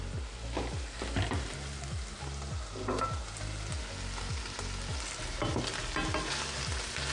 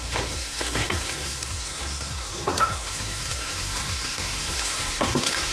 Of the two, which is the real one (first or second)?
first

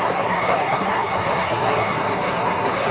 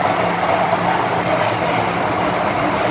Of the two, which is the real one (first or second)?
second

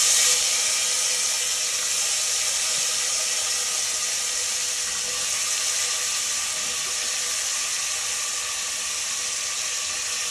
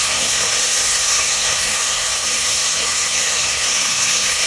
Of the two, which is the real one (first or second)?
first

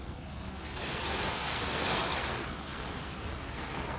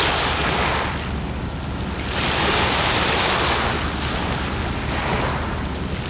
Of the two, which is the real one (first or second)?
second